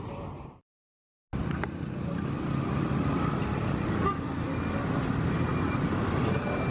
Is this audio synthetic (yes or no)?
no